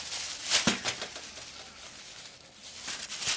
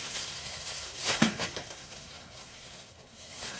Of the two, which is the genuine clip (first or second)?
first